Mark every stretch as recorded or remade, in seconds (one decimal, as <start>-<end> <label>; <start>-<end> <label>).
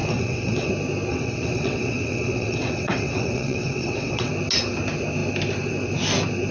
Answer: 0.0-0.7 remade; 0.7-1.1 recorded; 1.1-4.3 remade; 4.3-6.5 recorded